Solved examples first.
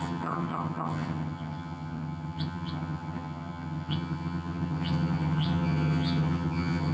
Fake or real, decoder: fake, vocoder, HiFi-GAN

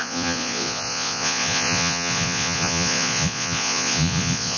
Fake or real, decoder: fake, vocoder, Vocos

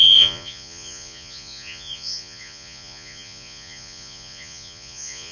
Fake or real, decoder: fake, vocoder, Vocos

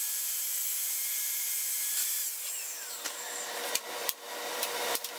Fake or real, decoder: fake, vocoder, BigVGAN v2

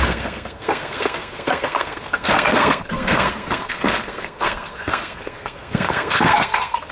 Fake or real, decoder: fake, codec, SNAC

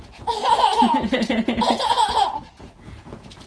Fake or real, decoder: fake, vocoder, Vocos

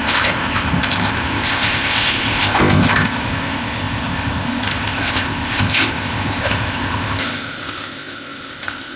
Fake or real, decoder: fake, codec, ZipCodec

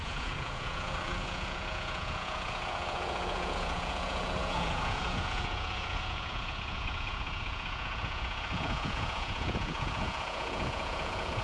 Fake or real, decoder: fake, vocoder, Vocos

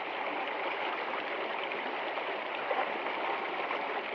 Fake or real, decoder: real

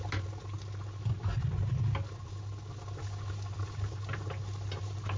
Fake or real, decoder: real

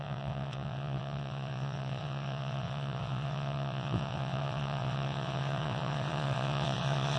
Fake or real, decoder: fake, vocoder, WaveNeXt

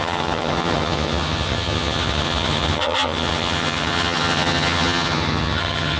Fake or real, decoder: fake, vocoder, HiFi-GAN